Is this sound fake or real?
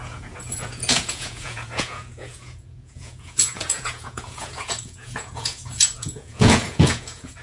fake